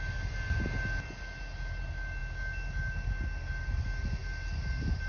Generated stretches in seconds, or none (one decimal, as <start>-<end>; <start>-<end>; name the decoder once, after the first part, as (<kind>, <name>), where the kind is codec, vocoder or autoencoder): none